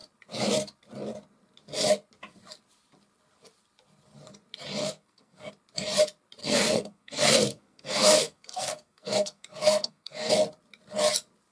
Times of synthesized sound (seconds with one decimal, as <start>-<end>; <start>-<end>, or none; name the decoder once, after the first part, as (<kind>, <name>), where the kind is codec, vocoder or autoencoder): 4.8-5.5 (codec, SNAC); 6.4-10.3

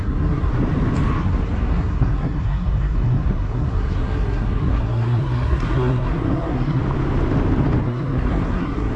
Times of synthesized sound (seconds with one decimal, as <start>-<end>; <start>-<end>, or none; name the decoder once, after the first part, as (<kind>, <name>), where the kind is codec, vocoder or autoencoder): 0.0-0.5 (codec, SNAC); 1.2-6.8; 7.8-9.0

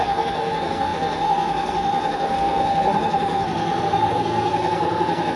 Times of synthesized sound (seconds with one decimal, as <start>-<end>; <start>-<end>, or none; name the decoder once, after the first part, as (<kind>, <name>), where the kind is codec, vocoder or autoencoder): 0.0-5.4 (codec, SNAC)